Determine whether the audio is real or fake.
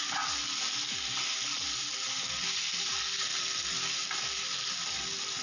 real